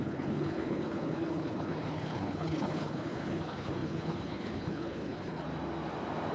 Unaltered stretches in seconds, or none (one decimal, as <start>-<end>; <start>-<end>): 5.5-6.3